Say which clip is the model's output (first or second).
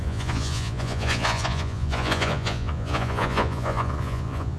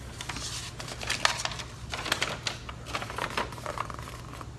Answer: first